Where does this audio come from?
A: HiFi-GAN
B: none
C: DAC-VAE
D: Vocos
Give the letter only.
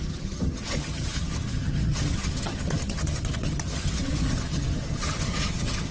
A